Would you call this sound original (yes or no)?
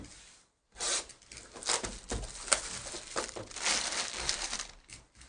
yes